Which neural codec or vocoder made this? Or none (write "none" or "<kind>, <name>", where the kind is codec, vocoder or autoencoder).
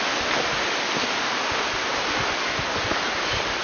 none